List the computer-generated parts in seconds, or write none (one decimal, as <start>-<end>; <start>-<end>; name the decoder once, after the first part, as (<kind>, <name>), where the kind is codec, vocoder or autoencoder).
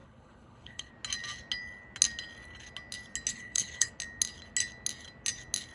0.0-0.9 (codec, HILCodec); 3.3-3.9